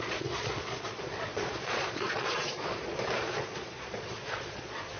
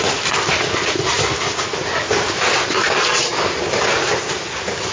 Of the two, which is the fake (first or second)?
first